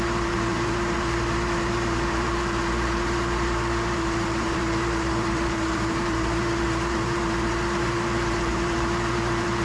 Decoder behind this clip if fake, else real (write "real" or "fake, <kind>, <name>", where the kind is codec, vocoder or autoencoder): fake, vocoder, BigVGAN v2